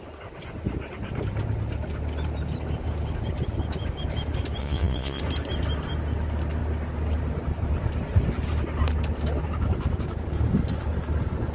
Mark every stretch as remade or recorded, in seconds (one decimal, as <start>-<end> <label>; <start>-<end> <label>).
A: 0.0-4.6 recorded; 4.6-5.2 remade; 5.2-11.5 recorded